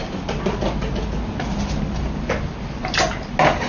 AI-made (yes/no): no